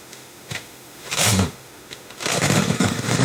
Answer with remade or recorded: remade